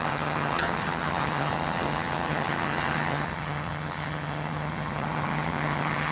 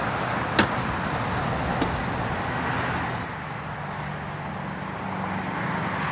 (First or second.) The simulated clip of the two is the first